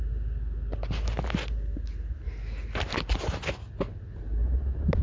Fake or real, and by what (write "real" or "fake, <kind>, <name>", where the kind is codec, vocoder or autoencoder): real